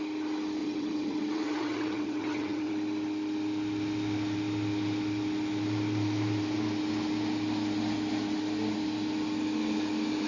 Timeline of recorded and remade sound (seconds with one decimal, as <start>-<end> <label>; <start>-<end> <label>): 0.0-0.6 recorded; 0.6-2.7 remade; 2.7-10.3 recorded